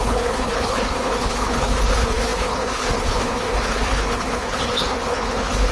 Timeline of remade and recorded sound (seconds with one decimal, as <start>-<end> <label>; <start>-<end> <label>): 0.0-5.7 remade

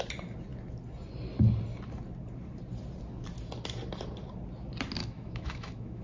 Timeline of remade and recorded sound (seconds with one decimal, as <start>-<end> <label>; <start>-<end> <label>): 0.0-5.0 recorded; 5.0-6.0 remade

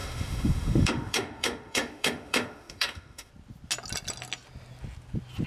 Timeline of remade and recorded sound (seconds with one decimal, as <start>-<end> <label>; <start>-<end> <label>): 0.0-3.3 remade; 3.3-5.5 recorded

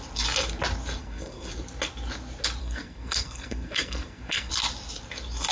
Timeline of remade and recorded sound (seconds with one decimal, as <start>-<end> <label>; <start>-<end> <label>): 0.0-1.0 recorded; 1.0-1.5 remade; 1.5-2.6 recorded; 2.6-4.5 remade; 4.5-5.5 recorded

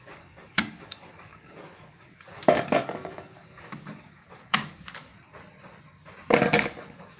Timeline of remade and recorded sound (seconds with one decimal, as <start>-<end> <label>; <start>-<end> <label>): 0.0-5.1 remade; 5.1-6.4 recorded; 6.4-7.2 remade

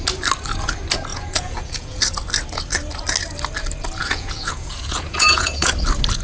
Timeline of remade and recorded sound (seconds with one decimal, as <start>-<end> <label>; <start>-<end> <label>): 0.0-1.1 recorded; 1.1-2.0 remade; 2.0-4.0 recorded; 4.0-5.7 remade; 5.7-6.2 recorded

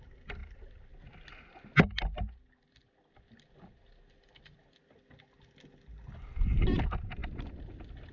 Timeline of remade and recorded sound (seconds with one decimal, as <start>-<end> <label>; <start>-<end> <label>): 0.0-8.1 recorded

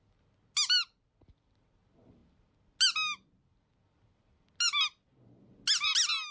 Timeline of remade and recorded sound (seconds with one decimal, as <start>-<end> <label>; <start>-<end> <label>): 0.0-6.3 recorded